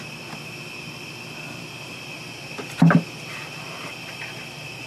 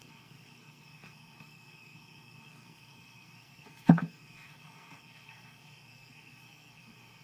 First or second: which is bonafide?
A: first